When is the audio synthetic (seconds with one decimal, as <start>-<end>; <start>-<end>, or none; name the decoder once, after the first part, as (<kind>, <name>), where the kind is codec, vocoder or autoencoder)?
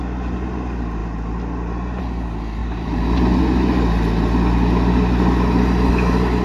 2.6-3.4 (vocoder, BigVGAN v2)